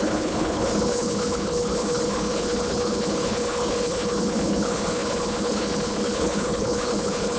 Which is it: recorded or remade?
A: remade